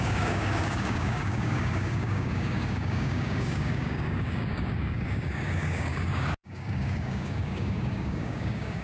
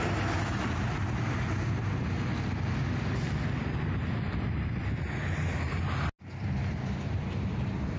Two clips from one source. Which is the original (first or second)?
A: second